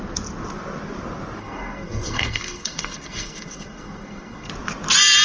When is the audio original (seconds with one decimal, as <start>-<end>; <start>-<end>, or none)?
0.0-1.4; 4.5-5.2